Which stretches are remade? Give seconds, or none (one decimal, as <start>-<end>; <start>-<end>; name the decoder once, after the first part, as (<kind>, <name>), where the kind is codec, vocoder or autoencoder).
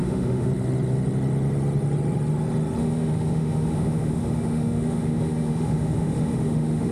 0.0-0.5 (autoencoder, DAC-VAE); 2.8-6.9